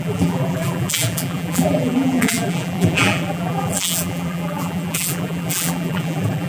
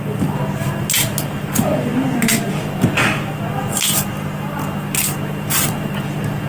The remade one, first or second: first